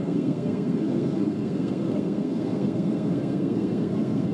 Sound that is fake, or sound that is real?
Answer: fake